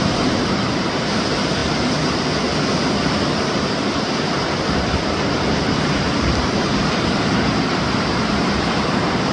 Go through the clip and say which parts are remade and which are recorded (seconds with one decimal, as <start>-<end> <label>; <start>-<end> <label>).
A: 0.0-1.6 remade; 1.6-3.1 recorded; 3.1-9.3 remade